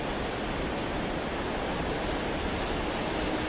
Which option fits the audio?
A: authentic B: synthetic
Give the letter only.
A